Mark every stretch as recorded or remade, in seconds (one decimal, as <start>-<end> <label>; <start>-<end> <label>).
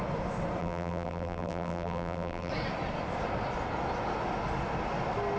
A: 0.0-0.6 recorded; 0.6-2.5 remade; 2.5-5.4 recorded